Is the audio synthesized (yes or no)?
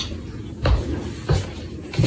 no